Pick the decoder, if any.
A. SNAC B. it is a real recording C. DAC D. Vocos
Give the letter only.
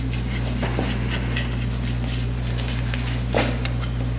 B